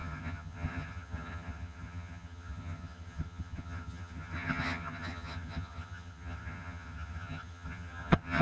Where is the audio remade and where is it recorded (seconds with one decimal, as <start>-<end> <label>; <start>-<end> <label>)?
0.0-8.4 remade